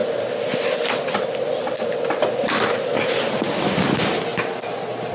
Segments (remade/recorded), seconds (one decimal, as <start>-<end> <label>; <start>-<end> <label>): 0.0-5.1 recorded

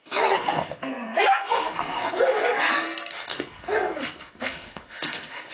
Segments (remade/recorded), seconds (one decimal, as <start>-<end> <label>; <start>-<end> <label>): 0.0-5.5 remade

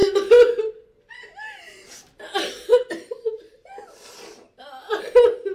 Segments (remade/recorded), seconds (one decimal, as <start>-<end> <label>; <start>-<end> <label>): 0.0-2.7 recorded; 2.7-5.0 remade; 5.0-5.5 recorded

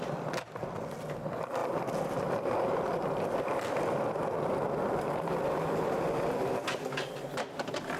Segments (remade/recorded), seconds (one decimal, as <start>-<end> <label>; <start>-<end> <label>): 0.0-8.0 recorded

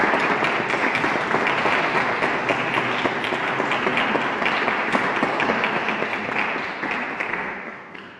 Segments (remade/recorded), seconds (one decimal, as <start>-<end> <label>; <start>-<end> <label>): 0.0-7.3 recorded; 7.3-8.2 remade

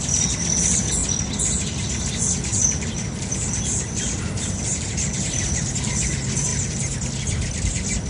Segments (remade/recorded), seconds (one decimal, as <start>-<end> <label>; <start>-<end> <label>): 0.0-2.5 recorded; 2.5-6.1 remade; 6.1-6.5 recorded; 6.5-7.1 remade; 7.1-8.1 recorded

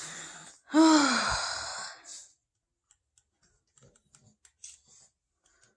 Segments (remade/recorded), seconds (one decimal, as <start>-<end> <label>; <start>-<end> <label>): 0.0-1.7 recorded; 1.7-2.5 remade; 2.5-5.8 recorded